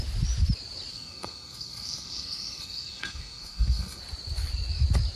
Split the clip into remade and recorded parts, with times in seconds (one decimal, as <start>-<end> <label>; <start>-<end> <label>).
0.0-0.9 recorded; 0.9-4.0 remade; 4.0-5.2 recorded